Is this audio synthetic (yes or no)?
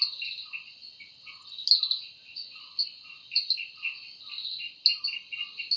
no